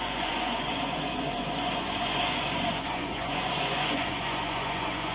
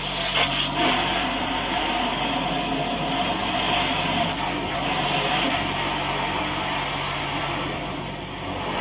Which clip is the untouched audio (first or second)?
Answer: second